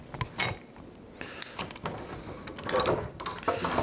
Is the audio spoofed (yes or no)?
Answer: no